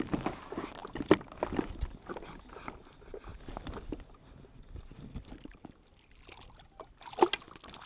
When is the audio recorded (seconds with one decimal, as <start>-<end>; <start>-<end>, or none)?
0.0-7.9